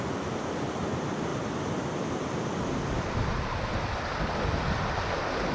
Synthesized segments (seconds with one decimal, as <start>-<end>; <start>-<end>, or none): none